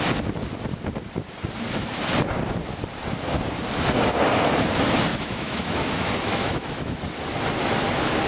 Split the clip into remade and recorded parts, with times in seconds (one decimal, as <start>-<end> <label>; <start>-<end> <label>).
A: 0.0-5.1 recorded; 5.1-7.0 remade; 7.0-8.3 recorded